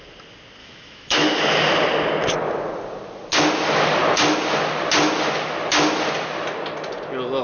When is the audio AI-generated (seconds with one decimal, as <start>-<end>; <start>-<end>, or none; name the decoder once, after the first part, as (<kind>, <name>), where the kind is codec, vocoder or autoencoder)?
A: 0.6-1.4 (autoencoder, DAC-VAE)